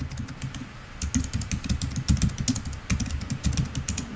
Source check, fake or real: real